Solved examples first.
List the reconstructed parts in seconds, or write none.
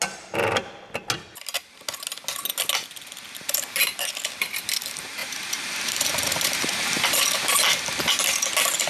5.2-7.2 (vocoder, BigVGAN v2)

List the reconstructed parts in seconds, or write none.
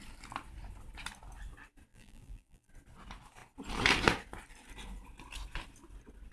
1.9-2.7 (vocoder, BigVGAN v2)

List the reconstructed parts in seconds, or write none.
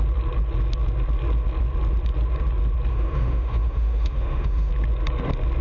2.9-4.7 (autoencoder, DAC-VAE)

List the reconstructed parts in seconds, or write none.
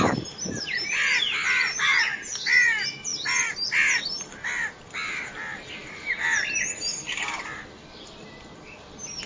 none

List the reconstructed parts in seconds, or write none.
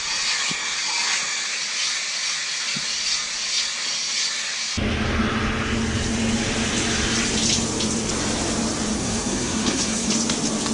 9.0-10.1 (codec, SNAC)